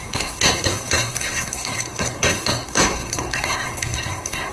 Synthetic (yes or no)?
yes